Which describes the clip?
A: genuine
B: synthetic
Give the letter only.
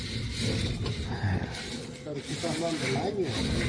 A